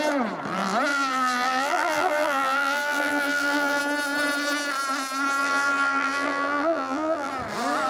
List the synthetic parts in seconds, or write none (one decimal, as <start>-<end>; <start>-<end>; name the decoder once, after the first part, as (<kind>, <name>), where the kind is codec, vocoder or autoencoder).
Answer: 0.9-3.8 (vocoder, BigVGAN v2); 5.4-7.3